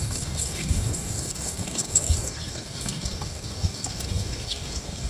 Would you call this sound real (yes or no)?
no